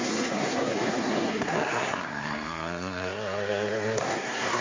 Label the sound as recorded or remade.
remade